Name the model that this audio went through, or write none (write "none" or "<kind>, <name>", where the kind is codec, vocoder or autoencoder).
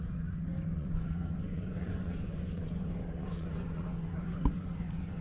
vocoder, Vocos